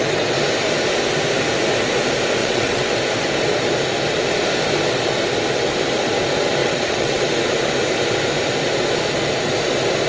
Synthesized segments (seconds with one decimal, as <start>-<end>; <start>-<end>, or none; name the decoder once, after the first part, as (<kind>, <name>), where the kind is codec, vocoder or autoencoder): 2.4-2.9 (vocoder, WaveNeXt); 6.6-7.2